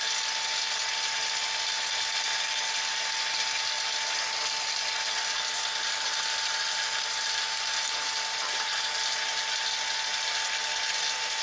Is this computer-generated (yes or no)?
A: no